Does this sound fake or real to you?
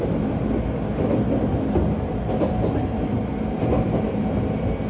real